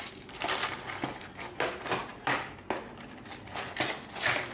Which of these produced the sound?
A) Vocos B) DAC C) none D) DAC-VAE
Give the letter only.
C